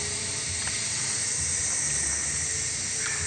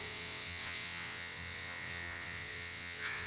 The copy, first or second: second